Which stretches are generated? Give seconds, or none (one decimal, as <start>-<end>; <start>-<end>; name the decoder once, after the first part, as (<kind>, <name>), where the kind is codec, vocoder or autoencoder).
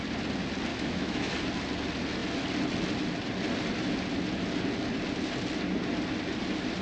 0.7-1.3 (autoencoder, DAC-VAE)